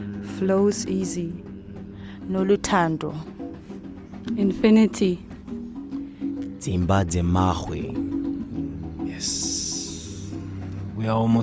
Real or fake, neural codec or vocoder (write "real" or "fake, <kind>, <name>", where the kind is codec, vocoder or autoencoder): real